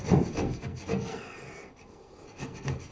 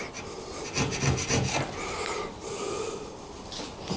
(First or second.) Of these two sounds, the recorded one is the second